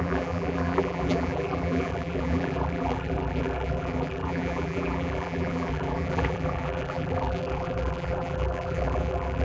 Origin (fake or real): fake